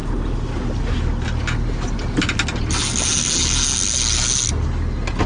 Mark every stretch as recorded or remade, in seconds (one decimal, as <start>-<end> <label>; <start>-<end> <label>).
0.0-5.3 recorded